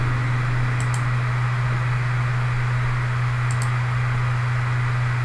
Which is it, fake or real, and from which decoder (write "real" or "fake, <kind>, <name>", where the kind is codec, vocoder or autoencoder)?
real